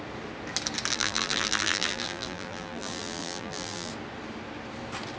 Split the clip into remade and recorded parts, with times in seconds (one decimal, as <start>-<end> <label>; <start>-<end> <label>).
0.0-0.9 recorded; 0.9-3.9 remade; 3.9-5.2 recorded